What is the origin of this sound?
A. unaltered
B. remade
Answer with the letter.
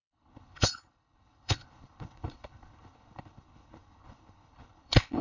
B